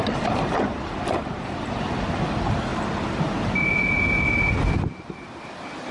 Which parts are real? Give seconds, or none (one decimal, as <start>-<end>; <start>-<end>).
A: 2.7-5.4